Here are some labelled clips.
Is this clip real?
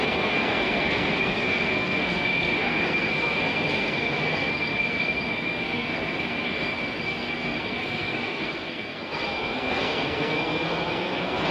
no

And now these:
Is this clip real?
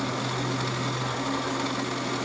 yes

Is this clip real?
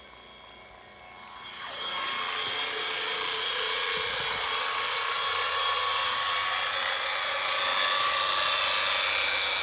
yes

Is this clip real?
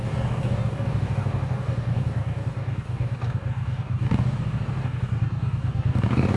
no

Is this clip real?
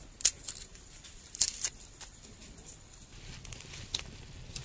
no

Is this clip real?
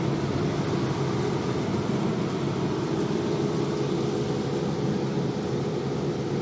yes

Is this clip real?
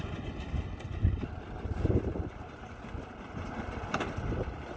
yes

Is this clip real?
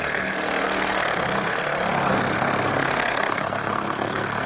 no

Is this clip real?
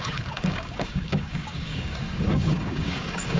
no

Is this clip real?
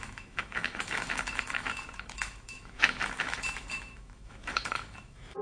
no